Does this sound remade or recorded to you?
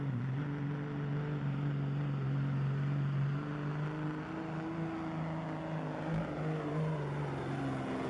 recorded